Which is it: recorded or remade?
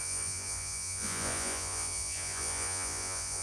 remade